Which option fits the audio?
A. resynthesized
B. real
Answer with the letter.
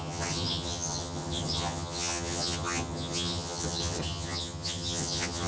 A